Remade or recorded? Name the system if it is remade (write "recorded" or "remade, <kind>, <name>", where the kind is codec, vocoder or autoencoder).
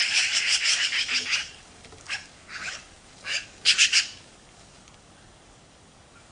remade, codec, DAC